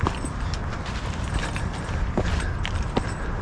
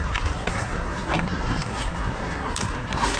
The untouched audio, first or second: first